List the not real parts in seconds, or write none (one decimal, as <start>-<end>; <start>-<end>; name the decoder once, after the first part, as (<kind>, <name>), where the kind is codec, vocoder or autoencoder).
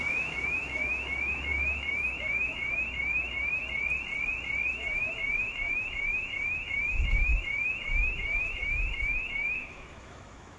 0.0-3.6 (autoencoder, DAC-VAE); 4.7-10.6